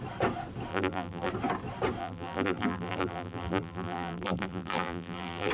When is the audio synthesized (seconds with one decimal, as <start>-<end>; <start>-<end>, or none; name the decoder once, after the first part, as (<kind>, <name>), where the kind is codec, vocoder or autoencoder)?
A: 0.7-1.3 (vocoder, BigVGAN v2); 2.0-5.5

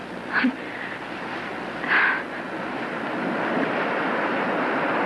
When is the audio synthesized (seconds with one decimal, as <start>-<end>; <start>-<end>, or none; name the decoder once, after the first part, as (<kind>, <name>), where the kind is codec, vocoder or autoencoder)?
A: 0.0-1.5 (vocoder, BigVGAN v2); 3.8-5.1

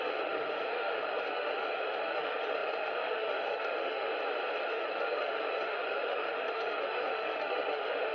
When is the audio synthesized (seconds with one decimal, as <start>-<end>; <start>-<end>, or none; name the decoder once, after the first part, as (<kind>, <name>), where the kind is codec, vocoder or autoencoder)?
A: 0.0-4.1 (autoencoder, DAC-VAE); 4.7-8.1